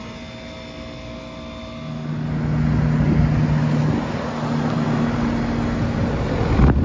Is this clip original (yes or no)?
yes